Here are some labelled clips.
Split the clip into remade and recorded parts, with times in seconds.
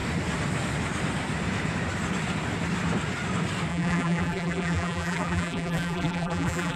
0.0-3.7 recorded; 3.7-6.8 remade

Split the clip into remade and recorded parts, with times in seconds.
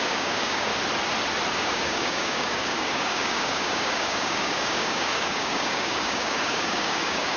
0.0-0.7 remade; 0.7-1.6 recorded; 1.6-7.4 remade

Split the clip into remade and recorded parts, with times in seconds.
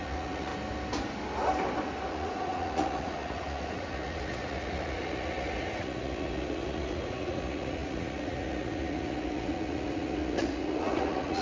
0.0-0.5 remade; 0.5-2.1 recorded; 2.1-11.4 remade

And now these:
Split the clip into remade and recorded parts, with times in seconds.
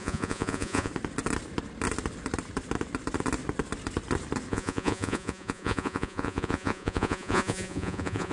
0.0-0.9 remade; 0.9-4.5 recorded; 4.5-8.3 remade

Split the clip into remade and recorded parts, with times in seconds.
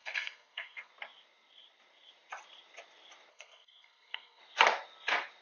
0.0-0.9 remade; 0.9-3.3 recorded; 3.3-4.4 remade; 4.4-5.4 recorded